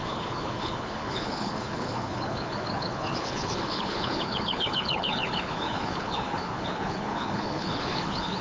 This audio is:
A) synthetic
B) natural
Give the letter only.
A